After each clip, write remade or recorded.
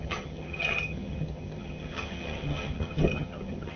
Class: remade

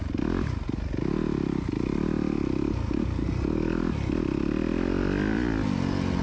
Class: recorded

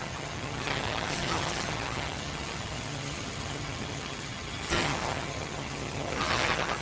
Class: remade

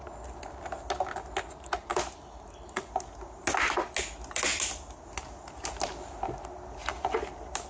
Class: recorded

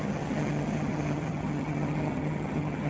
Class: remade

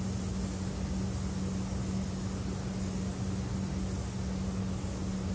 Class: recorded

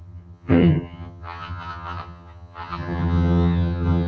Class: remade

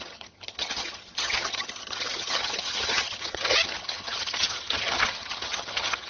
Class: remade